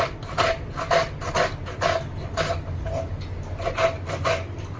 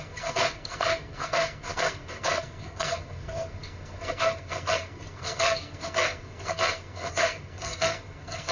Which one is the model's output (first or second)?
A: second